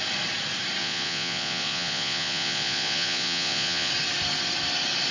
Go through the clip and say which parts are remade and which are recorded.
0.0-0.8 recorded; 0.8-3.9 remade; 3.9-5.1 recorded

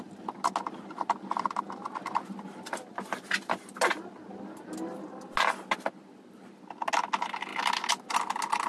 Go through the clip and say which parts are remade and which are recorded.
0.0-8.7 recorded